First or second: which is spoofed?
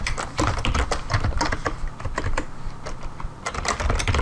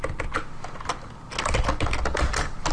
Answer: first